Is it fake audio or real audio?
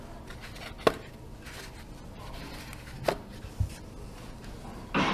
real